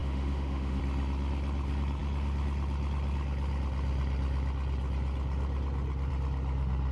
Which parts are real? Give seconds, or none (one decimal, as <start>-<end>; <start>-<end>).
0.8-6.9